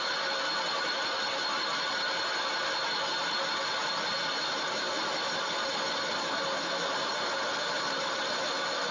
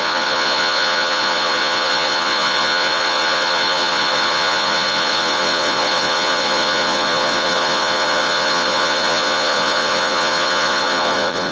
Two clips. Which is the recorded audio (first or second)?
first